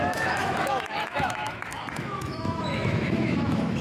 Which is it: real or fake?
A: fake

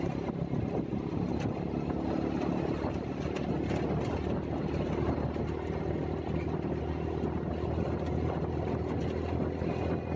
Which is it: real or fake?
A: real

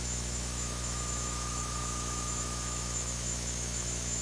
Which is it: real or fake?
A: fake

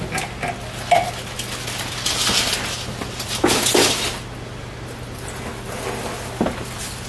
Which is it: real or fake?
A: real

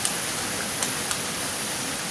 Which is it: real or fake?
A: real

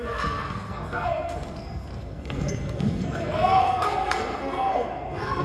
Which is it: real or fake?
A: fake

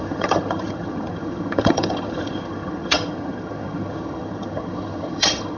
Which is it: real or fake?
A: fake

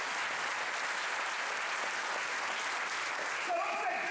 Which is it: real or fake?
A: real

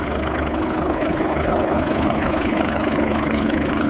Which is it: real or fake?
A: fake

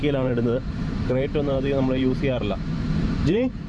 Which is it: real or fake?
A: fake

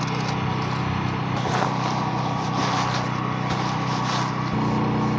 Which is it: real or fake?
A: real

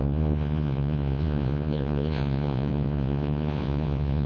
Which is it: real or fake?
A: fake